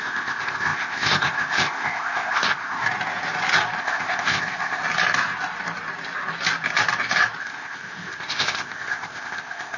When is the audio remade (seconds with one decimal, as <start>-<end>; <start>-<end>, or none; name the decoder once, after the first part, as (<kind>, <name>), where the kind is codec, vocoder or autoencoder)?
0.0-2.8 (codec, ZipCodec); 3.8-4.8; 7.4-9.8